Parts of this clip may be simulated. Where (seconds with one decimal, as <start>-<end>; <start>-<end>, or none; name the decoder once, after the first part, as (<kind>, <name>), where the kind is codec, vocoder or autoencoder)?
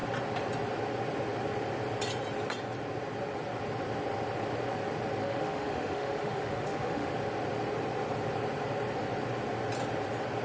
5.2-7.1 (autoencoder, DAC-VAE)